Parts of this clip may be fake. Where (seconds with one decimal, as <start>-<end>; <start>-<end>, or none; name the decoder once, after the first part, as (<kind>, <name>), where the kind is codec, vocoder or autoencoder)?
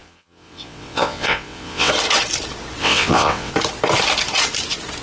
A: 0.0-1.9 (vocoder, WaveNeXt); 2.8-3.5